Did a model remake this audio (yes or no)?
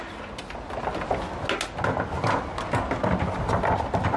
no